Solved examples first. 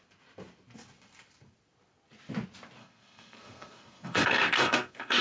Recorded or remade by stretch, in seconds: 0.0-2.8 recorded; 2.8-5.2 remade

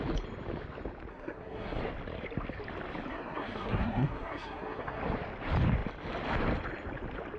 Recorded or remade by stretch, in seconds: 0.0-1.1 recorded; 1.1-1.8 remade; 1.8-3.1 recorded; 3.1-5.0 remade; 5.0-7.4 recorded

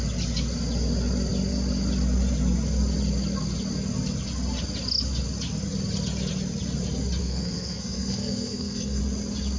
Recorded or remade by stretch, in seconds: 0.0-7.2 recorded; 7.2-9.0 remade; 9.0-9.6 recorded

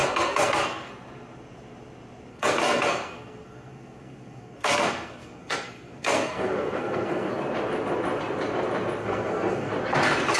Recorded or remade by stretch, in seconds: 0.0-0.9 remade; 0.9-2.3 recorded; 2.3-7.3 remade; 7.3-9.0 recorded; 9.0-9.7 remade; 9.7-10.4 recorded

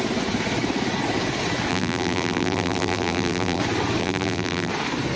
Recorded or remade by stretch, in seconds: 0.0-1.7 recorded; 1.7-3.6 remade; 3.6-4.0 recorded; 4.0-4.7 remade; 4.7-5.2 recorded

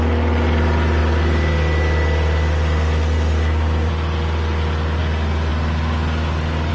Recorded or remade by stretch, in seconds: 0.0-6.7 recorded